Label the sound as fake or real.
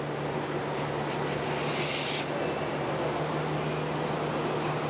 real